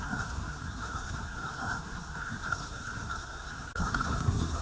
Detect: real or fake fake